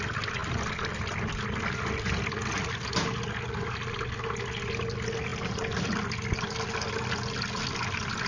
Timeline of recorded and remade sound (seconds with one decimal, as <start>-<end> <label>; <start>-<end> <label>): 0.0-8.3 recorded